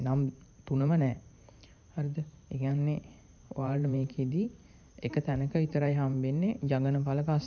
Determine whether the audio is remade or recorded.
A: remade